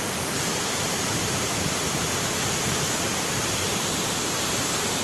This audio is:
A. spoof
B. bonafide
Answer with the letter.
A